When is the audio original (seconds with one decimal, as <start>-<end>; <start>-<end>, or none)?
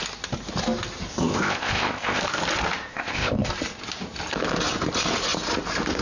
0.0-1.1; 2.2-2.9; 3.5-6.0